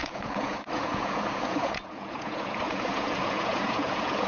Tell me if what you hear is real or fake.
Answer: fake